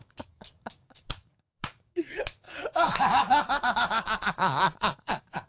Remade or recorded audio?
remade